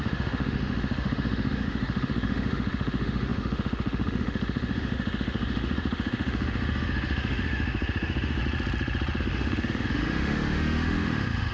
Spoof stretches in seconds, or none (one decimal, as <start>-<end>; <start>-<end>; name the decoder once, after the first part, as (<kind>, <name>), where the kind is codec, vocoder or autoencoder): 0.0-8.4 (autoencoder, DAC-VAE); 9.2-11.5